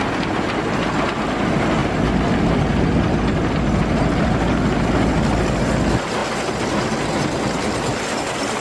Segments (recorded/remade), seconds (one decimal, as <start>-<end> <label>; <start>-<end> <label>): 0.0-8.6 recorded